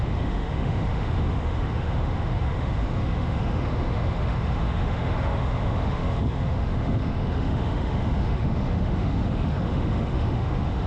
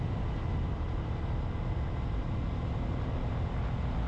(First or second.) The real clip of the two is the second